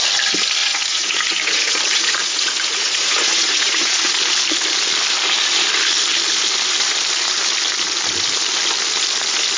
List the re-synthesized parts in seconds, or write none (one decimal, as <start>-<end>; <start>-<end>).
0.6-4.2

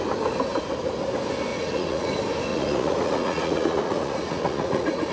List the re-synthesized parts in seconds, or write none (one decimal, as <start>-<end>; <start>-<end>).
1.5-2.1; 2.5-5.1

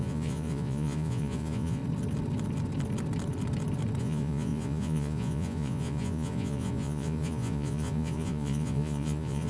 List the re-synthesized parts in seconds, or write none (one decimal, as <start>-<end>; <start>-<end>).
0.0-1.8; 4.0-9.5

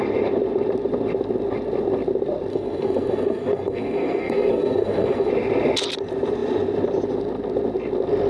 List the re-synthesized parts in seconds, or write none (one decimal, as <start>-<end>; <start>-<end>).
2.5-5.3

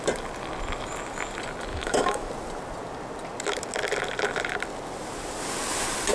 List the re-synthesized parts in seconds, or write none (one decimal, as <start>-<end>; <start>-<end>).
1.7-2.3

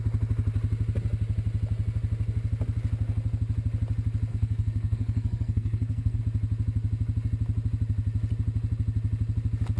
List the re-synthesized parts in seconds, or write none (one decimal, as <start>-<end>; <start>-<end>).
4.3-6.2